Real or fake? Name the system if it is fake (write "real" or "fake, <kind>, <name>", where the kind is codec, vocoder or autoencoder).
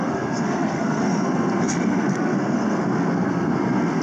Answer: fake, codec, SNAC